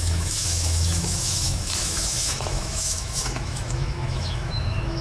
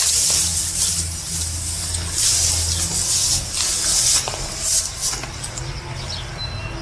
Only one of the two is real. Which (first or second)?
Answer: second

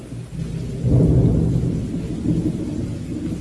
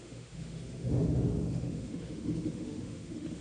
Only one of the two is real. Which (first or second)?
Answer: first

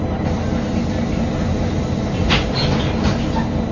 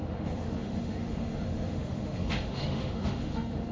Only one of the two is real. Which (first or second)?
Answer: first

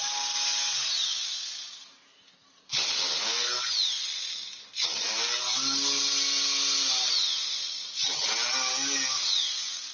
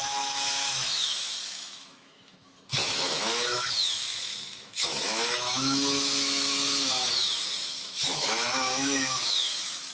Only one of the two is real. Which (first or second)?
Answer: first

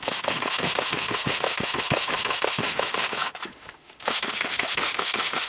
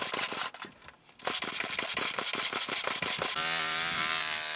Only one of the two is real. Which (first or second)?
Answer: second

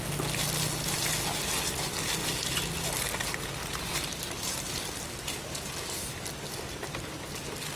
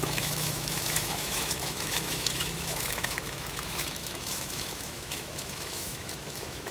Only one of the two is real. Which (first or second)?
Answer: first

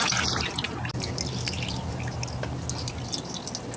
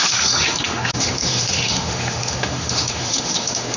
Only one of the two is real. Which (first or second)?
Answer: first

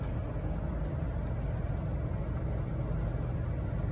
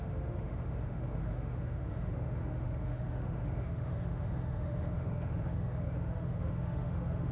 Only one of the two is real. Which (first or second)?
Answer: first